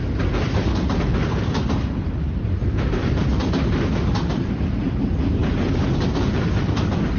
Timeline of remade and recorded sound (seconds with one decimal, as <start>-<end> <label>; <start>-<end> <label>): 0.0-3.0 recorded; 3.0-3.5 remade; 3.5-5.4 recorded; 5.4-6.4 remade; 6.4-7.2 recorded